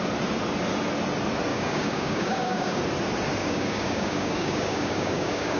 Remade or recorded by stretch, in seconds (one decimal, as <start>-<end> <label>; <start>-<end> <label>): 0.0-1.5 recorded; 1.5-2.8 remade; 2.8-3.4 recorded; 3.4-5.6 remade